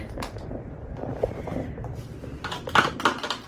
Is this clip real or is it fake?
fake